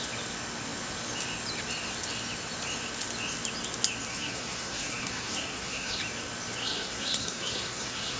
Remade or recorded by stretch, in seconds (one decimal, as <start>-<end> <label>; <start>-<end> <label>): 0.0-4.1 recorded; 4.1-6.0 remade; 6.0-6.6 recorded; 6.6-8.2 remade